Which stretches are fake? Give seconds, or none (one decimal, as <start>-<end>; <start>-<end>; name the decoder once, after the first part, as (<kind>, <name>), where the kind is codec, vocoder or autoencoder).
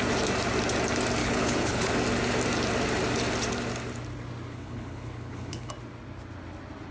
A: 1.2-1.9 (codec, HILCodec); 4.5-5.7